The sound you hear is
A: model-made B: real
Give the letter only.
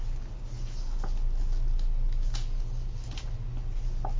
B